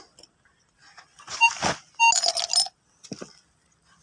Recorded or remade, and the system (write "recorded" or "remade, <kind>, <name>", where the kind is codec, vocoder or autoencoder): recorded